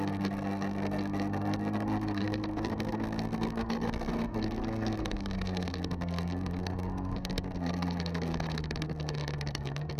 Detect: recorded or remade remade